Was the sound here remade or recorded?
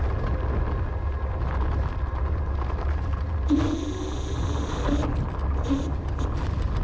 recorded